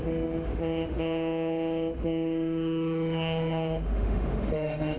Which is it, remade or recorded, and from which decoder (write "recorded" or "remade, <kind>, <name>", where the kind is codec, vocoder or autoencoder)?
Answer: remade, autoencoder, DAC-VAE